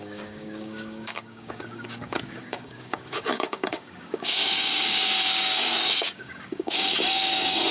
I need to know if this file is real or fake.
fake